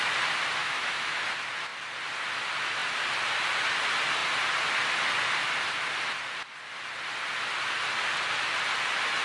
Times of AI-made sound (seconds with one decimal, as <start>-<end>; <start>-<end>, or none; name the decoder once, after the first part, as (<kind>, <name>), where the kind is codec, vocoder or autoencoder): 0.6-1.2 (autoencoder, DAC-VAE)